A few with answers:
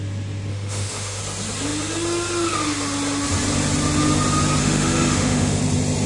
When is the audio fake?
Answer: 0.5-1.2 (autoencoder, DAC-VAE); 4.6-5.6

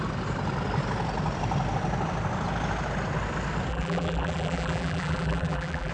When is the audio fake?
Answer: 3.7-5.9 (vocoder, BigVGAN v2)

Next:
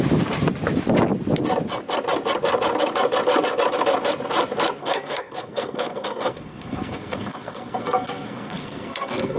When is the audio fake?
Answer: 4.8-9.4 (codec, SNAC)

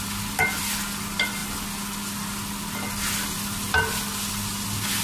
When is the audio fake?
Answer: none

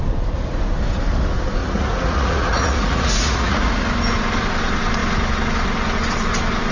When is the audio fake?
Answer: 1.6-3.8 (vocoder, Vocos)